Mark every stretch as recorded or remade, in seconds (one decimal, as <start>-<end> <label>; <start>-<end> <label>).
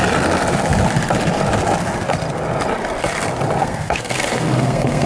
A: 0.0-3.6 recorded; 3.6-5.1 remade